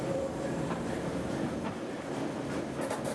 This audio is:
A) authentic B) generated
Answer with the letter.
A